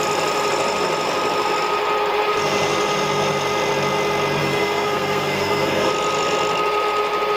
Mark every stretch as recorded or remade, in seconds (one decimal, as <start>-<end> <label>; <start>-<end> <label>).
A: 0.0-4.4 recorded; 4.4-5.9 remade; 5.9-7.4 recorded